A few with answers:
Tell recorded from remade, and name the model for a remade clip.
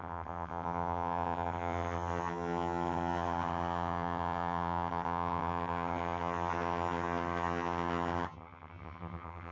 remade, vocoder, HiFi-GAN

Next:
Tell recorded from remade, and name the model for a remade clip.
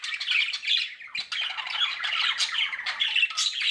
recorded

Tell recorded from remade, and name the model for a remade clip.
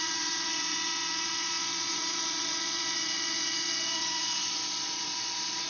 remade, vocoder, Vocos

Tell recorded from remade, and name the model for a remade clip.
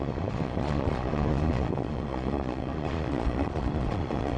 remade, vocoder, Vocos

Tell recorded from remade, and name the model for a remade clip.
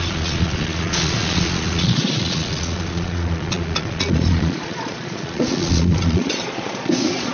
remade, vocoder, Vocos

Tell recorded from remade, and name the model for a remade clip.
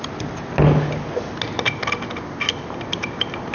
recorded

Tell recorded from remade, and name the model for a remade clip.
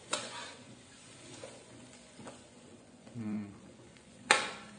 remade, vocoder, Vocos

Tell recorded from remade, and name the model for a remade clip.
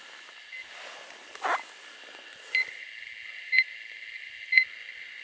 recorded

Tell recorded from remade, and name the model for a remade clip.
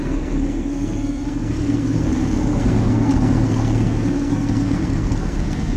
remade, codec, SNAC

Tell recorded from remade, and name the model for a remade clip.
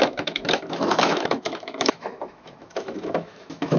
remade, autoencoder, DAC-VAE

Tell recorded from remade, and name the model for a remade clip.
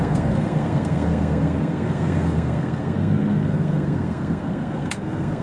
remade, codec, SNAC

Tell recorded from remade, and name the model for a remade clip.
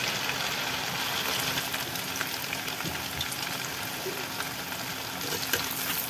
recorded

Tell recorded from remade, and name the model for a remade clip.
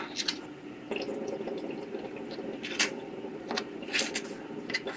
recorded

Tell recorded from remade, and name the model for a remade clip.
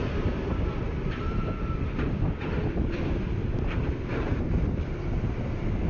recorded